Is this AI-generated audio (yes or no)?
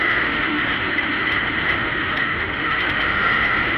yes